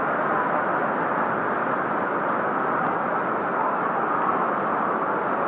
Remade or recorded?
recorded